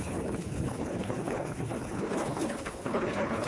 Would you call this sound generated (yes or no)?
yes